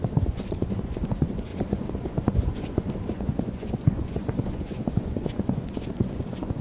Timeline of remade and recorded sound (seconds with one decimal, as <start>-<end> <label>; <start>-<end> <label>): 0.0-6.6 remade